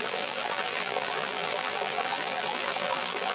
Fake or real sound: fake